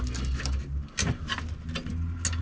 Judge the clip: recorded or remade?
recorded